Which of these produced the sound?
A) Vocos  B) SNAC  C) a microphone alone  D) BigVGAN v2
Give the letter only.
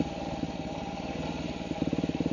C